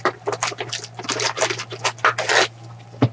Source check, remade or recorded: recorded